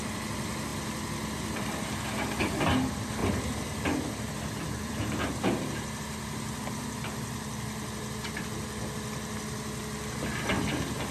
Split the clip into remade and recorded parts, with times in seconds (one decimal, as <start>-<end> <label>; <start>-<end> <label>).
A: 0.0-11.1 recorded